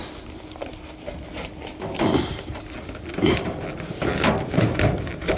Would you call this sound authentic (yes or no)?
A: yes